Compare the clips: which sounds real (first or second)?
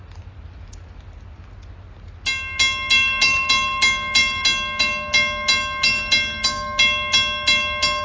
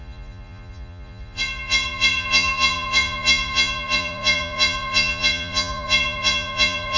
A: first